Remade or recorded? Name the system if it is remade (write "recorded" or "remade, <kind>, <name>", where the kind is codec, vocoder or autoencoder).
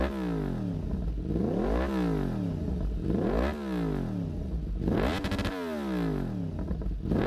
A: recorded